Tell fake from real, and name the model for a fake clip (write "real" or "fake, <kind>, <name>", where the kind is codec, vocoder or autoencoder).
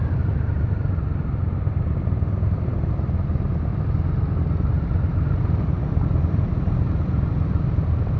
real